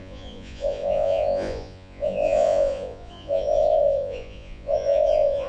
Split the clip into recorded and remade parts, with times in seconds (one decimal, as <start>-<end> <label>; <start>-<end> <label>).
0.0-5.5 remade